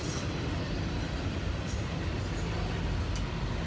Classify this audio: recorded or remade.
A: recorded